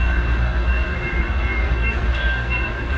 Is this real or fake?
fake